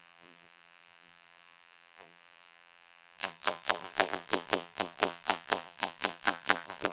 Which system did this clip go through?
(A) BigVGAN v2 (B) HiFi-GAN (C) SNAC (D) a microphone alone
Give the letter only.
A